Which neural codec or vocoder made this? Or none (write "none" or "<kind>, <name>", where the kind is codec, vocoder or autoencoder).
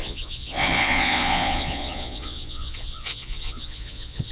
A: vocoder, Vocos